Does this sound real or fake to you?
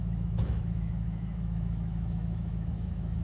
fake